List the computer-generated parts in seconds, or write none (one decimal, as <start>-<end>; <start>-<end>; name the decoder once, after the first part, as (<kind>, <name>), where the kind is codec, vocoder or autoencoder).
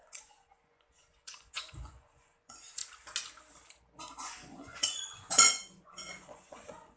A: 0.0-2.8 (vocoder, Vocos); 4.2-7.0